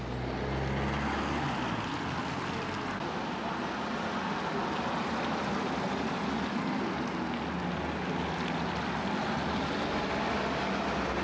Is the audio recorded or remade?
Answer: recorded